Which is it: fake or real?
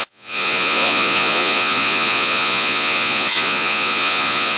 fake